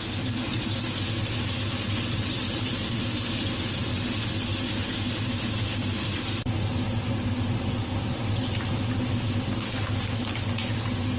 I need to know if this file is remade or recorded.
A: recorded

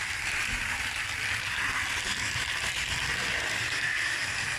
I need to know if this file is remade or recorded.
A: recorded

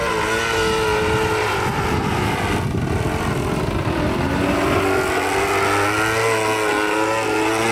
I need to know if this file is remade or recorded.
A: recorded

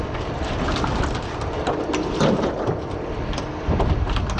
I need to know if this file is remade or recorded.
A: recorded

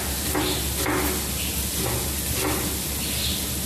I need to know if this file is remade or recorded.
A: recorded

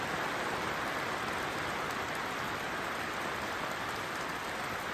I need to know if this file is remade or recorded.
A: recorded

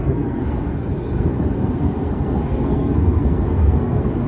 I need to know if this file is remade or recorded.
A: remade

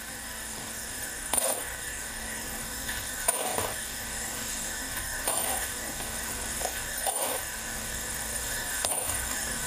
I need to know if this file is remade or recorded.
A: remade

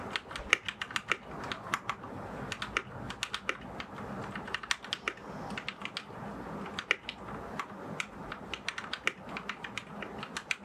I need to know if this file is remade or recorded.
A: recorded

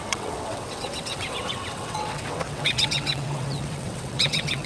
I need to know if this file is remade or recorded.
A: remade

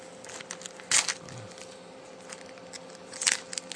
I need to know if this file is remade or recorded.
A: recorded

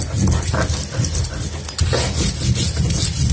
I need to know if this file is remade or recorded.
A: recorded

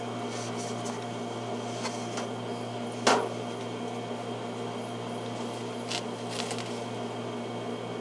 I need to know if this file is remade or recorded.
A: recorded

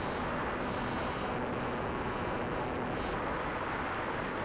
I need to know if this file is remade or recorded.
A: recorded